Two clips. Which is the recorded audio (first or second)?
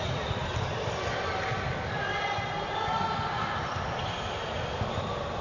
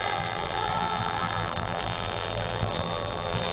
first